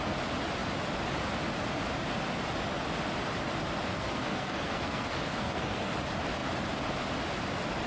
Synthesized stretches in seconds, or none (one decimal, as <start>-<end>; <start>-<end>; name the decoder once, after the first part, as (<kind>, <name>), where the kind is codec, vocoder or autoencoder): 3.9-5.9 (codec, SNAC)